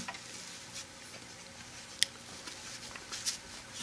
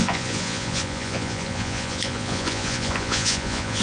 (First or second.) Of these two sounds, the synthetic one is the second